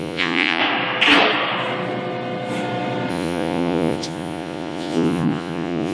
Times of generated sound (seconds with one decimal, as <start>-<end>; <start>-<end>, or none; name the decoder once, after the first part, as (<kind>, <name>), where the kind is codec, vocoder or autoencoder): 0.0-0.6 (vocoder, Vocos); 3.1-5.9